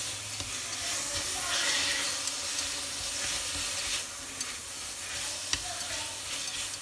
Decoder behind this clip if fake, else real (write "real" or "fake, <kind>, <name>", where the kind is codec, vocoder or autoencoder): real